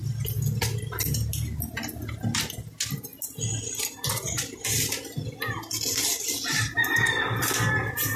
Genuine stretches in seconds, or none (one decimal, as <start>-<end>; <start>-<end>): 0.0-8.2